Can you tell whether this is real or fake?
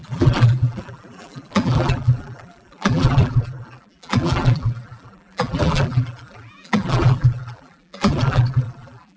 fake